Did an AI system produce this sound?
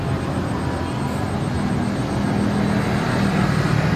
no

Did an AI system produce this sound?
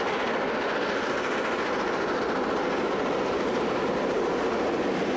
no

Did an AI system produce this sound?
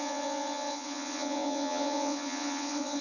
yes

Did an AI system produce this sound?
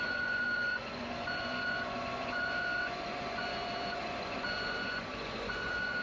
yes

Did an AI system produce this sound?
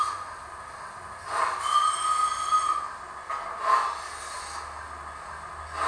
no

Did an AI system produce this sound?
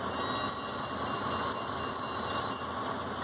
no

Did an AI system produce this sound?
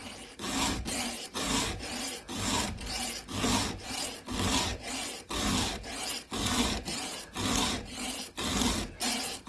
no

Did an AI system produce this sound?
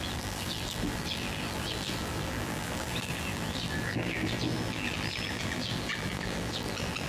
yes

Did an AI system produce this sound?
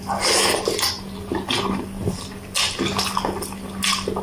no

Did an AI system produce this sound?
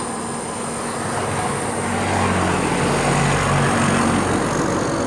no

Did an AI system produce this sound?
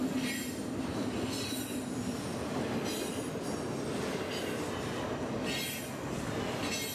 no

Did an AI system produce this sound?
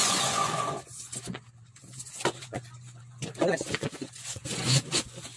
yes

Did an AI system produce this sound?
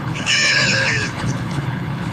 yes